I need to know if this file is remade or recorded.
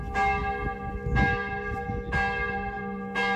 recorded